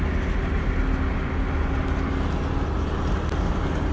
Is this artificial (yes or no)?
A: no